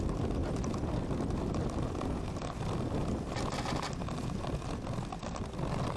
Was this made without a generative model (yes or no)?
yes